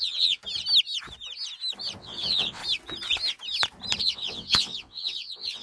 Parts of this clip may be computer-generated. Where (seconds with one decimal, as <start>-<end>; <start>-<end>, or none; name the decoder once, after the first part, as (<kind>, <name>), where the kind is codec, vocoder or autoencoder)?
0.0-0.4 (vocoder, WaveNeXt); 2.0-2.6; 4.0-5.6